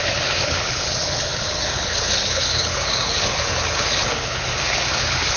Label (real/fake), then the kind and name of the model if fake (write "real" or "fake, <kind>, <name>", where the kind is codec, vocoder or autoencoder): fake, codec, HILCodec